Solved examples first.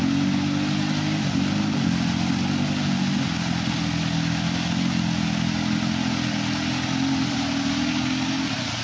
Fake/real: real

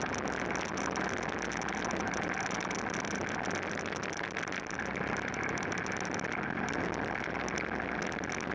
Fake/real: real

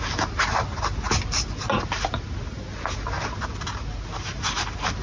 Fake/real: real